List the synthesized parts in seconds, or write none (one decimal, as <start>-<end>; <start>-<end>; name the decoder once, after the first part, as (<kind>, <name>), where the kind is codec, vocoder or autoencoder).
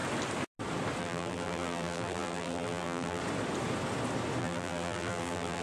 1.0-3.2 (vocoder, BigVGAN v2); 4.4-5.6